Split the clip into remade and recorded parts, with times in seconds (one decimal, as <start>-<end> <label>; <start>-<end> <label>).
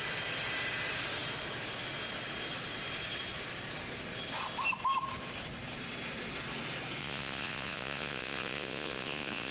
0.0-7.0 recorded; 7.0-9.5 remade